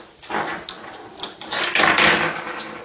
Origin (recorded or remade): recorded